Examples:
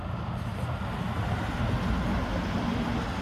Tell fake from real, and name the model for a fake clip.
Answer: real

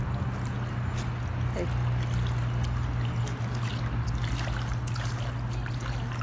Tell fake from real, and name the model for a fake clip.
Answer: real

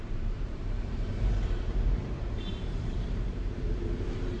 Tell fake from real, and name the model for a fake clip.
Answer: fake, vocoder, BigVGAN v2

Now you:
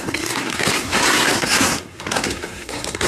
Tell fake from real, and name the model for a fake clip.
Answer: fake, codec, SNAC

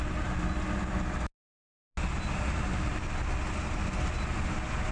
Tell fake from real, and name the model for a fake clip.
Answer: real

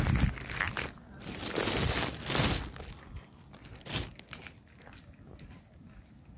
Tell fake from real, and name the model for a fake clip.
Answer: real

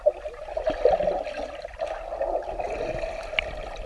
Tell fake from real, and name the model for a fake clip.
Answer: real